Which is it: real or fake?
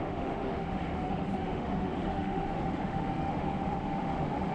fake